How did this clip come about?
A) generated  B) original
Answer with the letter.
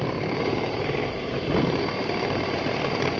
A